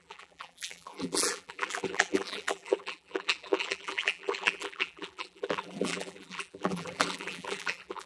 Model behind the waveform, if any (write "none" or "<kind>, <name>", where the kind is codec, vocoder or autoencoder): vocoder, BigVGAN v2